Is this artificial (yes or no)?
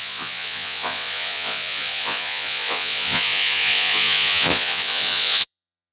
yes